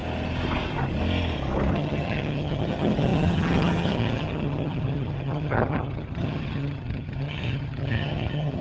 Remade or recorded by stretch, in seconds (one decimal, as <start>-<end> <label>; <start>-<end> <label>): 0.0-1.7 recorded; 1.7-8.6 remade